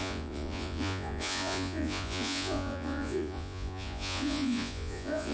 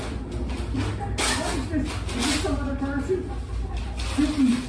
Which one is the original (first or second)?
second